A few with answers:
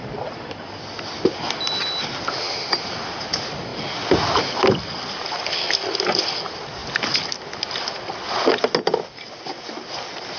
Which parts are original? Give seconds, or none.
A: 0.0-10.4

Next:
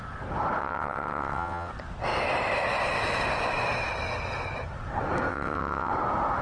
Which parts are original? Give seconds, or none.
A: 0.0-0.6; 1.7-5.3; 5.9-6.4

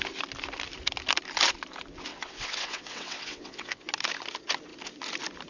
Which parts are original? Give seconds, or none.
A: 0.0-2.1; 3.9-5.5

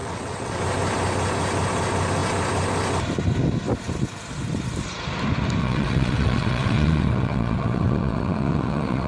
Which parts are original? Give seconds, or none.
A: 0.6-5.6

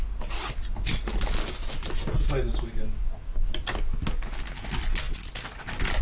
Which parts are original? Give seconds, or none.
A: 0.0-6.0